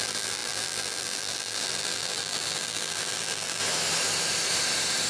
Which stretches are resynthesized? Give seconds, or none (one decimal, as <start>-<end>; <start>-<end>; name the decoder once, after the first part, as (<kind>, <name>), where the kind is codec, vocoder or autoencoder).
0.0-3.6 (vocoder, BigVGAN v2)